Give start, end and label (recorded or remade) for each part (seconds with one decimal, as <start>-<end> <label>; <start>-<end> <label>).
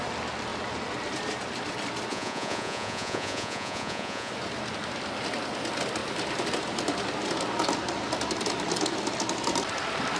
0.0-2.1 recorded; 2.1-4.3 remade; 4.3-10.2 recorded